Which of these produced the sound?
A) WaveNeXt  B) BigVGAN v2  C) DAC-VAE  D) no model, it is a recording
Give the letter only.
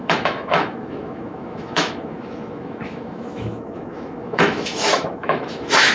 C